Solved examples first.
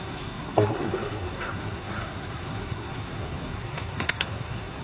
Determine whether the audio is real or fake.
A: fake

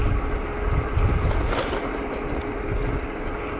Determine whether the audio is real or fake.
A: real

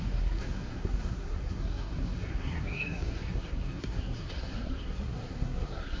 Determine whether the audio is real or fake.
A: fake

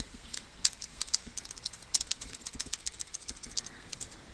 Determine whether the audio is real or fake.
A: fake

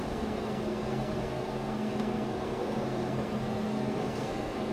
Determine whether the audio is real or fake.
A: fake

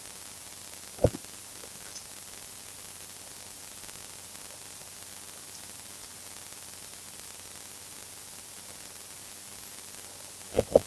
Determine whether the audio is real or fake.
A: real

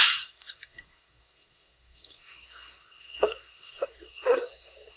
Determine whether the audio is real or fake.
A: fake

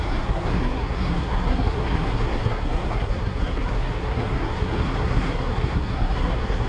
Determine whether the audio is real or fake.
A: fake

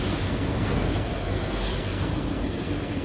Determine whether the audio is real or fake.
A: fake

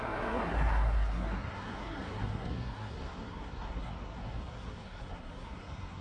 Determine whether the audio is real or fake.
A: fake